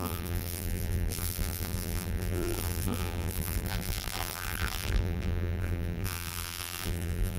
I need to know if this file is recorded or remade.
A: remade